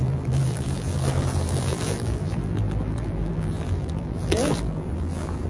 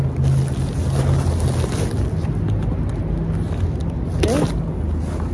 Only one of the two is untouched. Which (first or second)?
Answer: second